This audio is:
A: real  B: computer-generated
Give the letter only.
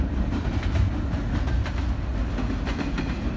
A